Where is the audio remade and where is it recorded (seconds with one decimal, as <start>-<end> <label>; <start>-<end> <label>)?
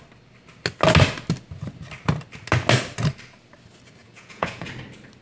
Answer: 0.0-4.0 recorded; 4.0-4.7 remade; 4.7-5.2 recorded